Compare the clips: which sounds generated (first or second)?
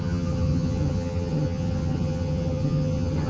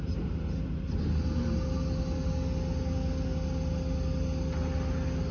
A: first